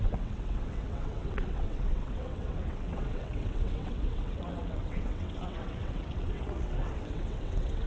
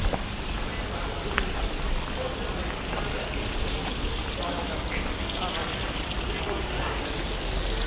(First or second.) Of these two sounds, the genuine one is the second